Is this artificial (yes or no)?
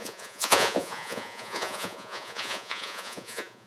yes